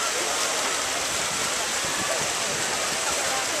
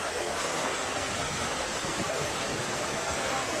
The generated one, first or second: second